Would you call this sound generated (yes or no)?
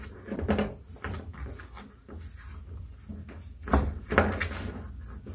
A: no